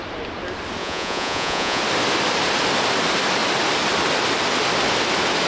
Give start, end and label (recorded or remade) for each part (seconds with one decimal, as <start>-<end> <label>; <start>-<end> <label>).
0.0-0.8 recorded; 0.8-1.8 remade; 1.8-5.5 recorded